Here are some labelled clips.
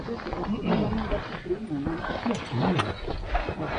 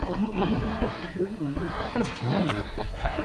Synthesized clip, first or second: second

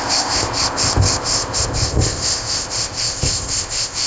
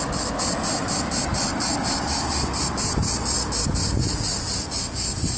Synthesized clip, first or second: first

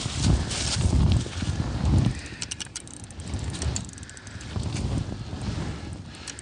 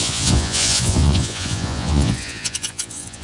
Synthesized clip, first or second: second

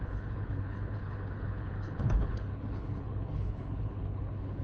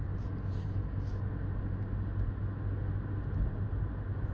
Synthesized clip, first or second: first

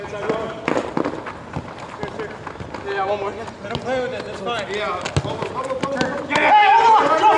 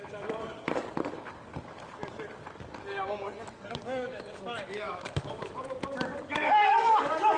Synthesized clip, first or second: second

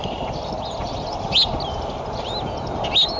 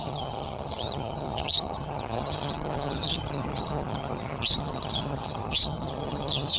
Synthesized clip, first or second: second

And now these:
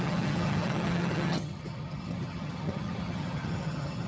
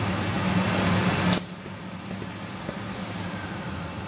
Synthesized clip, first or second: first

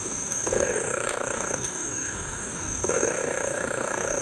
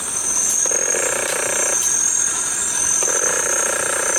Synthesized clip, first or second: first